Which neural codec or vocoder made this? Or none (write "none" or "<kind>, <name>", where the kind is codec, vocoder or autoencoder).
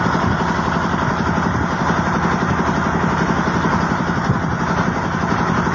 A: none